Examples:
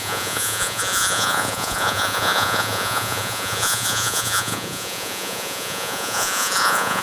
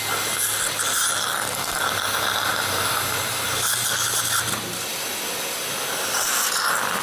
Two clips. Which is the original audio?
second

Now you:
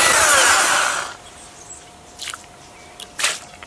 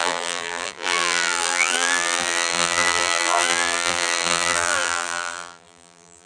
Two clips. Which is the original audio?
first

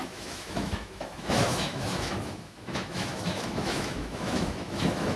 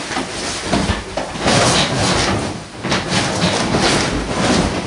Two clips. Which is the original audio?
second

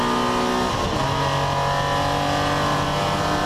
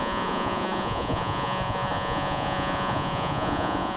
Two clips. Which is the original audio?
first